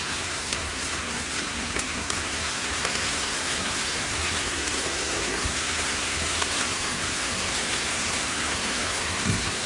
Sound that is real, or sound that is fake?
fake